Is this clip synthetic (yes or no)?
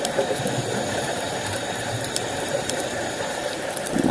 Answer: yes